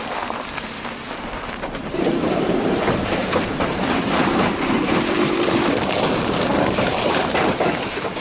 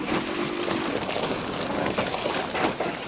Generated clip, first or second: first